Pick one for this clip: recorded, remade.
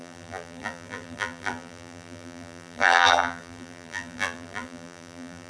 remade